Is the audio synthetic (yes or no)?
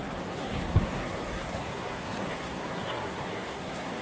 yes